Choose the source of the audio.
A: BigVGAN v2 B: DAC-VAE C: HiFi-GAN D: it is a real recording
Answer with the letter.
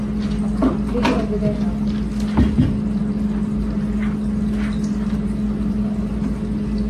D